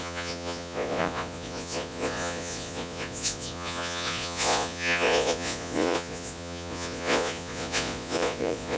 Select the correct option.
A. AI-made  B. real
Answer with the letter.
A